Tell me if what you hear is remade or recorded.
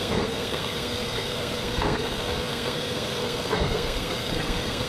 remade